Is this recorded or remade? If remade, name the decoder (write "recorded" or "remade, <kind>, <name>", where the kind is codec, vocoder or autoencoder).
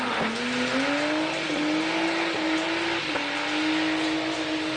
recorded